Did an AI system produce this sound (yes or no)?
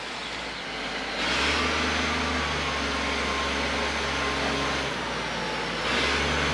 no